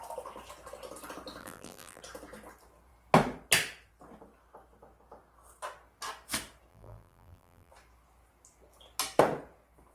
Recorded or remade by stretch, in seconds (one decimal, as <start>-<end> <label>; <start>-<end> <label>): 0.0-1.4 recorded; 1.4-2.0 remade; 2.0-6.7 recorded; 6.7-7.7 remade; 7.7-9.9 recorded